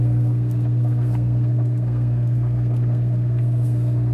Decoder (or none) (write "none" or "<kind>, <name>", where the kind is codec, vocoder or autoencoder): codec, SNAC